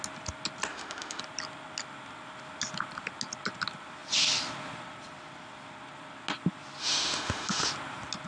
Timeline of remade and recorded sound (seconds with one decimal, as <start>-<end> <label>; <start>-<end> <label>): 0.0-0.7 recorded; 0.7-1.2 remade; 1.2-6.8 recorded; 6.8-7.7 remade; 7.7-8.3 recorded